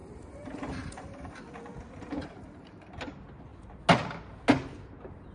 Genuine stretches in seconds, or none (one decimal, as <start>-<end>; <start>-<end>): 1.4-2.2; 3.0-5.3